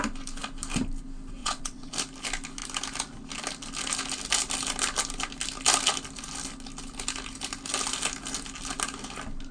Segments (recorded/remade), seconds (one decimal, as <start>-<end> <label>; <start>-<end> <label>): 0.0-1.4 recorded; 1.4-1.9 remade; 1.9-9.5 recorded